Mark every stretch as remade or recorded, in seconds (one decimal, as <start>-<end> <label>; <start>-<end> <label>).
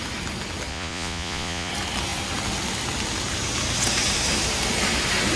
0.0-0.7 recorded; 0.7-1.7 remade; 1.7-5.4 recorded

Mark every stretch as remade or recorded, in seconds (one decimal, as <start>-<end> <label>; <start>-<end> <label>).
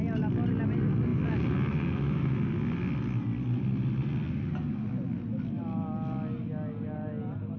0.0-7.6 recorded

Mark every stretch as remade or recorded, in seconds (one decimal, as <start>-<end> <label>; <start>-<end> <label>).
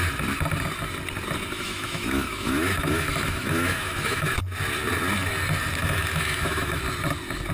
0.0-1.5 recorded; 1.5-4.4 remade; 4.4-5.8 recorded; 5.8-6.8 remade; 6.8-7.5 recorded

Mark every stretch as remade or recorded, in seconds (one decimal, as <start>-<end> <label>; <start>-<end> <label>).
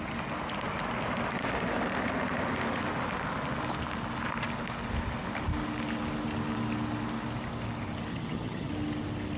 0.0-8.1 recorded; 8.1-8.7 remade; 8.7-9.4 recorded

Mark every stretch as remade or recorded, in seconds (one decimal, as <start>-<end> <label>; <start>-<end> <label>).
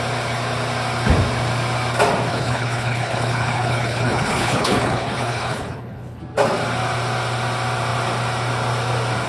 0.0-2.3 recorded; 2.3-6.2 remade; 6.2-9.3 recorded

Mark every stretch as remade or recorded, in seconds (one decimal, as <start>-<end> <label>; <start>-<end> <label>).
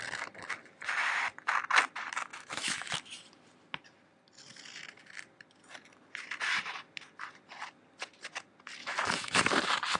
0.0-2.3 recorded; 2.3-3.0 remade; 3.0-8.8 recorded; 8.8-9.4 remade; 9.4-10.0 recorded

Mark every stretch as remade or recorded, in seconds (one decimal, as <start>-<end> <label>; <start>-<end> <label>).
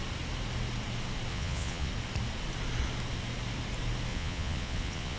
0.0-1.3 recorded; 1.3-1.9 remade; 1.9-4.1 recorded; 4.1-5.2 remade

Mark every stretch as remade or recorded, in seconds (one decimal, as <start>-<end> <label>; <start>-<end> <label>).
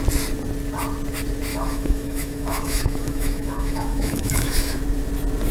0.0-1.5 recorded; 1.5-4.8 remade; 4.8-5.5 recorded